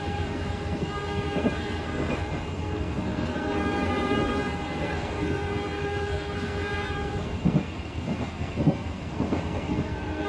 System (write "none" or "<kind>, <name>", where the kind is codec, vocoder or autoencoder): codec, SNAC